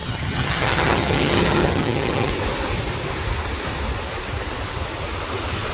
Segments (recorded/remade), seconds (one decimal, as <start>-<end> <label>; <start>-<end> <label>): 0.0-2.3 remade; 2.3-5.7 recorded